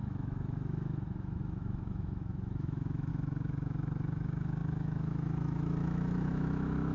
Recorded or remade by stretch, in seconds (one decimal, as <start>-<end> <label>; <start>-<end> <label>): 0.0-6.9 remade